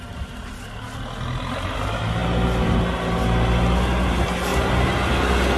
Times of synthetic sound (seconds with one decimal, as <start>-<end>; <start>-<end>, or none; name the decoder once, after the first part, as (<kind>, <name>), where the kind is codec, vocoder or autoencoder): none